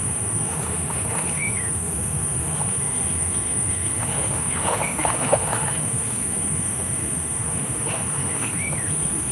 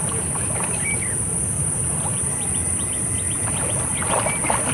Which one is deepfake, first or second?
first